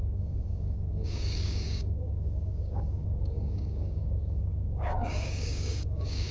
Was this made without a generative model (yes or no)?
no